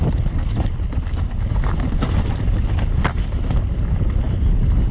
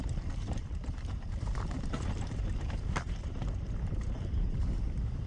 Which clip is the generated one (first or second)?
second